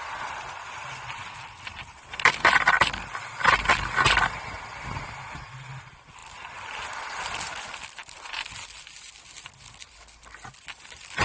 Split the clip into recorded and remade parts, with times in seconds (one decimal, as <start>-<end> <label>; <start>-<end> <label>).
0.0-11.2 recorded